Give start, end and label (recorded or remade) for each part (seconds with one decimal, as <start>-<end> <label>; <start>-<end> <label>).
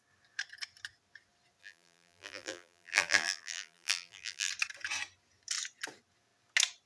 0.0-1.6 recorded; 1.6-4.5 remade; 4.5-6.9 recorded